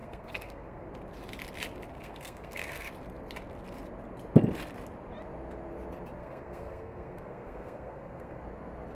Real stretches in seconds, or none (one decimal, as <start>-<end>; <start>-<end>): 0.9-1.9; 2.9-6.2; 8.4-8.9